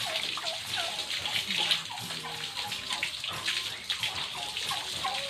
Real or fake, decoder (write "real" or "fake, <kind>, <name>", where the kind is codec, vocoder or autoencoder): real